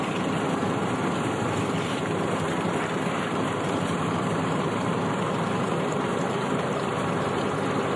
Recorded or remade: remade